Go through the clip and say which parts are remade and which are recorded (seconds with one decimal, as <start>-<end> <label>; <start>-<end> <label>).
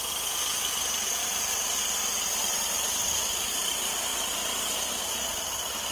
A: 0.0-1.2 recorded; 1.2-1.8 remade; 1.8-2.4 recorded; 2.4-3.6 remade; 3.6-5.9 recorded